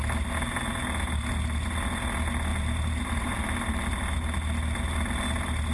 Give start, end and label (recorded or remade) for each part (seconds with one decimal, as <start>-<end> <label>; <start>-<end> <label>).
0.0-2.5 recorded; 2.5-3.9 remade; 3.9-5.7 recorded